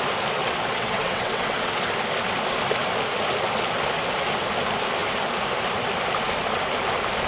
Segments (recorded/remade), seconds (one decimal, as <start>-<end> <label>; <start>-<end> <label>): 0.0-0.4 recorded; 0.4-1.8 remade; 1.8-7.3 recorded